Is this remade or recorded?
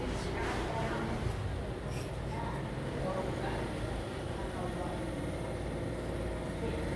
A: recorded